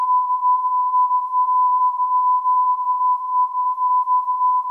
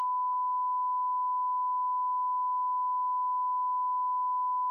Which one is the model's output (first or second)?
first